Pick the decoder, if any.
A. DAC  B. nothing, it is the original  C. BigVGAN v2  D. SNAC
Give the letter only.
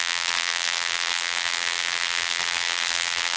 C